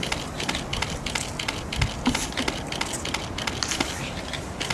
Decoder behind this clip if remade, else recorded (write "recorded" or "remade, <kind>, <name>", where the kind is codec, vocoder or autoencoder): recorded